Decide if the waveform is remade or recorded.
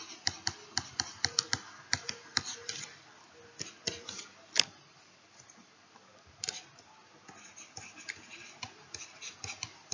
remade